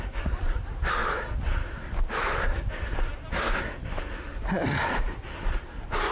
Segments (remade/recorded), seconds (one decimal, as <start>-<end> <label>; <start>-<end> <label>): 0.0-6.1 recorded